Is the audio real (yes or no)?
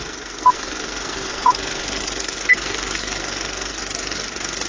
no